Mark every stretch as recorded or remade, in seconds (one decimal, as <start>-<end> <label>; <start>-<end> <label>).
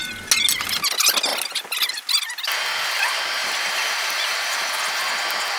0.0-3.4 recorded; 3.4-4.7 remade; 4.7-5.6 recorded